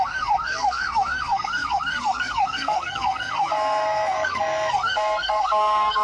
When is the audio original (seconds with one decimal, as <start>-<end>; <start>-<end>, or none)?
none